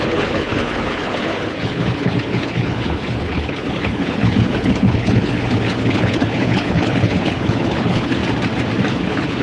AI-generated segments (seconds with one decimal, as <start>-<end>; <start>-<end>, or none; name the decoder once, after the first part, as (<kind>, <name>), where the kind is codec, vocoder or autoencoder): 0.0-8.2 (codec, HILCodec); 8.9-9.4